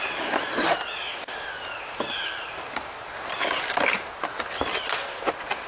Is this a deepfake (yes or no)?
no